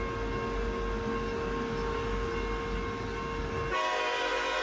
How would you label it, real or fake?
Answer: real